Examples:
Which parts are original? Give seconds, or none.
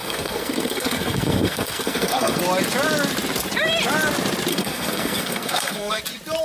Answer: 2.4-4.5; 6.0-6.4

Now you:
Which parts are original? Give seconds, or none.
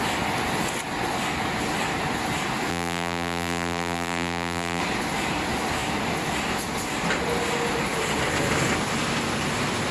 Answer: 0.0-2.7; 4.8-9.9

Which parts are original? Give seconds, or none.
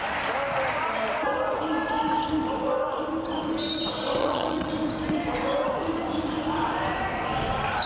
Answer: 0.0-4.2; 4.7-7.9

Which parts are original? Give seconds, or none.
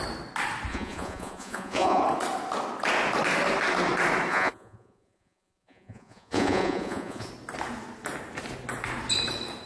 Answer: 0.0-0.7; 2.0-4.3; 7.3-9.7